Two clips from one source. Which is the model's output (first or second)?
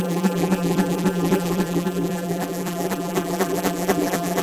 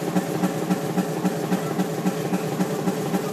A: first